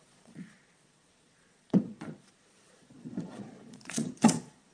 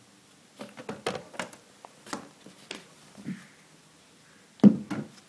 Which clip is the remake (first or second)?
first